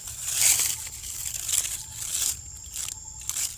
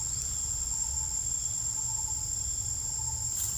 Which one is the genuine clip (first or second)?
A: first